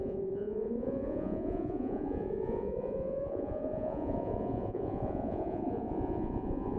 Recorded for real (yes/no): no